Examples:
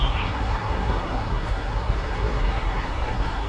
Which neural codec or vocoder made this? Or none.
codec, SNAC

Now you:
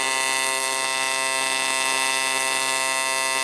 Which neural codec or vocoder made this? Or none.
none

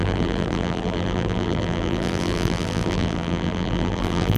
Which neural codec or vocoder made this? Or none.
vocoder, BigVGAN v2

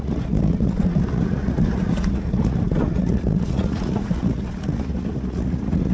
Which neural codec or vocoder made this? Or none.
vocoder, Vocos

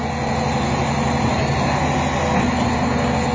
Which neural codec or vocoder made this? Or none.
none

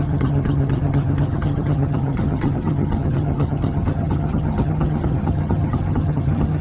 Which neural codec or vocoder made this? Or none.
vocoder, HiFi-GAN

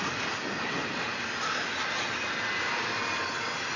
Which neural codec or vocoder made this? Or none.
none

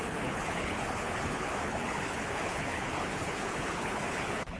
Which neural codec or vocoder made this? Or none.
codec, HILCodec